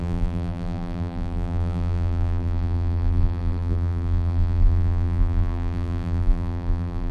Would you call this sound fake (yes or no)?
yes